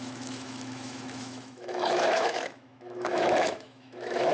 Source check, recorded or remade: remade